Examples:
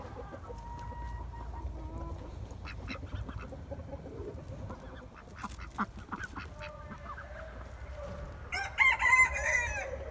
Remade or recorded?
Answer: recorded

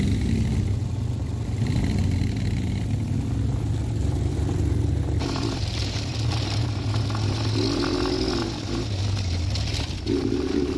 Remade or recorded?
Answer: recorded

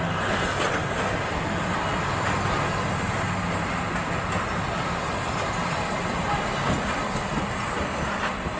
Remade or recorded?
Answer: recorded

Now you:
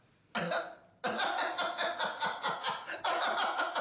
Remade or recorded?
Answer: recorded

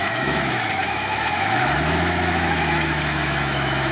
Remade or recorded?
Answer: remade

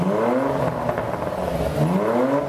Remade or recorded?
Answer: recorded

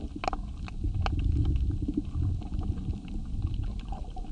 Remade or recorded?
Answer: recorded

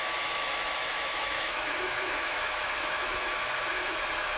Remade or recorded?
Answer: remade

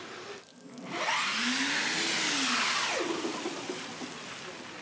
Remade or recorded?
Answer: recorded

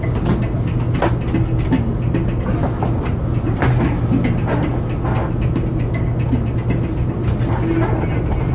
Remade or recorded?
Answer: recorded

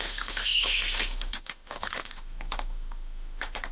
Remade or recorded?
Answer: remade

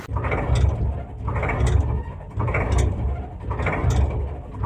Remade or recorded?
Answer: recorded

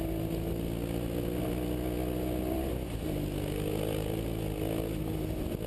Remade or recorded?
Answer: recorded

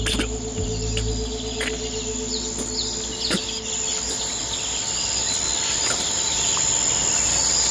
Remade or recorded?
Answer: recorded